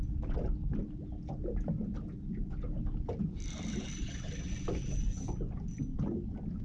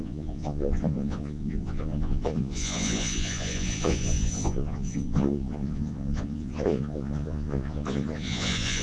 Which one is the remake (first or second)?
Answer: second